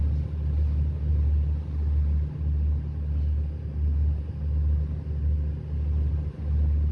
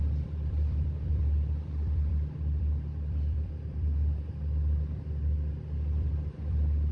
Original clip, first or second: first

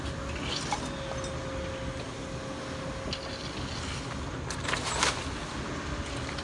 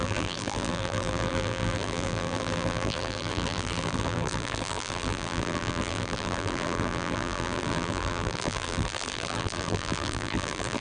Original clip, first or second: first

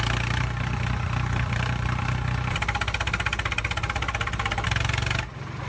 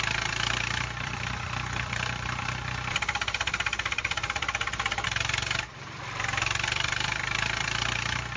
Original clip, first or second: first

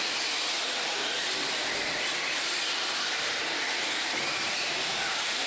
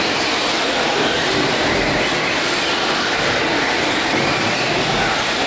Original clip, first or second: second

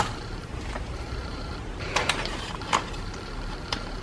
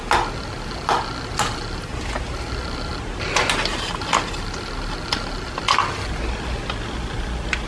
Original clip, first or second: second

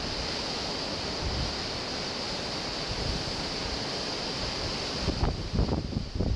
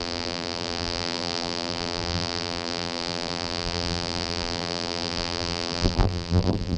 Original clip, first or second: first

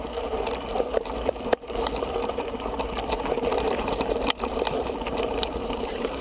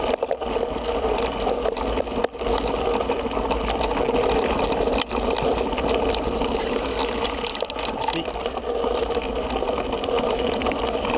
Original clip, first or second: second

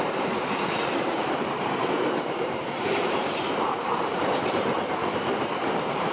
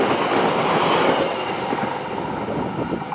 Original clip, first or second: second